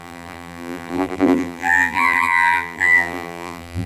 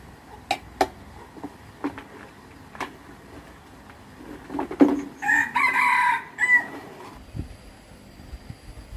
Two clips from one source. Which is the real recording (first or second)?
second